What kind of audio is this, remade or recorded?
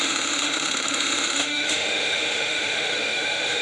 remade